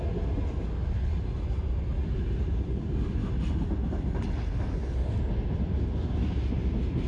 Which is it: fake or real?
real